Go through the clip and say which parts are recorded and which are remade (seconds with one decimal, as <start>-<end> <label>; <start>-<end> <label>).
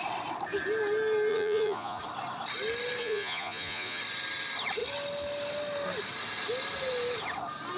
0.0-1.3 recorded; 1.3-2.0 remade; 2.0-3.0 recorded; 3.0-4.0 remade; 4.0-7.8 recorded